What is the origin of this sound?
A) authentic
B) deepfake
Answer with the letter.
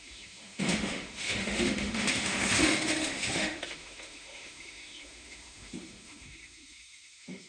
B